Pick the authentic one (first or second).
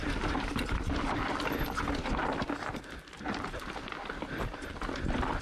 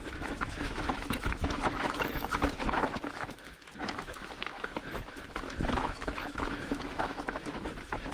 first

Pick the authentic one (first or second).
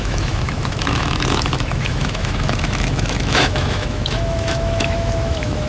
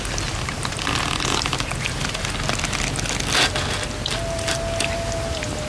second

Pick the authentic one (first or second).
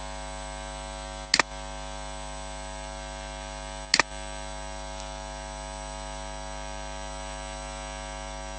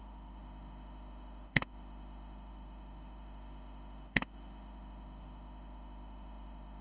first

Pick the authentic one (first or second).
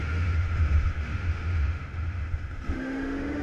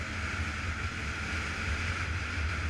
second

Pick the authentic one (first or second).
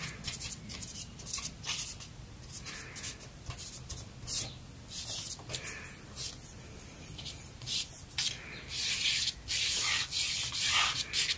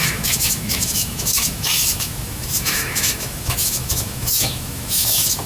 first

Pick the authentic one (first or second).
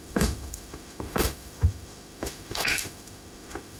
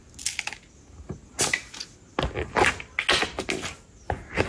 second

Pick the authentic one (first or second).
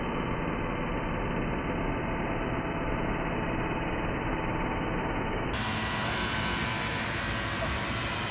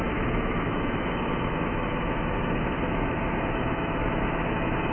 first